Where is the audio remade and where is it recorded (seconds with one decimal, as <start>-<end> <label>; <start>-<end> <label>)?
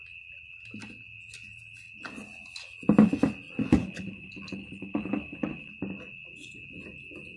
0.0-3.8 recorded; 3.8-5.7 remade; 5.7-7.4 recorded